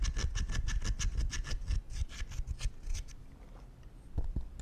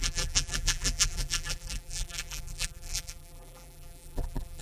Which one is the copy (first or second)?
second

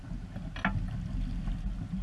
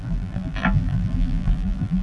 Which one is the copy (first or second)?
second